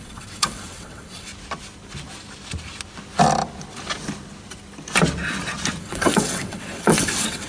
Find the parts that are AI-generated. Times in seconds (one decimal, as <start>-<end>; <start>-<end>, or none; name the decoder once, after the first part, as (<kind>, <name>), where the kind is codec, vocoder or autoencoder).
0.0-1.3 (vocoder, WaveNeXt); 5.8-7.5